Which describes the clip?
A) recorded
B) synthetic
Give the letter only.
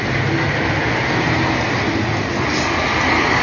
A